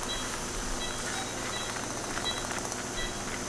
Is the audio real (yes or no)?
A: yes